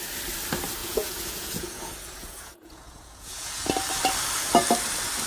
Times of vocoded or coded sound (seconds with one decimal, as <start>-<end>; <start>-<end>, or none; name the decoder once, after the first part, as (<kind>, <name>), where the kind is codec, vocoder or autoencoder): 0.8-3.6 (vocoder, Vocos)

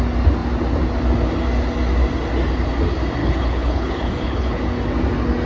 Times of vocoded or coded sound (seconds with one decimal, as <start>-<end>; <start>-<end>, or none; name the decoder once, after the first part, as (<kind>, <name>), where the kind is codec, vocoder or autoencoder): 3.2-4.6 (codec, HILCodec)

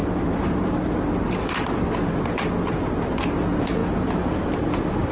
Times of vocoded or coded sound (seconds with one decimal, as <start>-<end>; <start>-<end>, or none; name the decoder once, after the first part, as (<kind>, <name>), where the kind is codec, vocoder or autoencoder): 3.8-5.1 (vocoder, BigVGAN v2)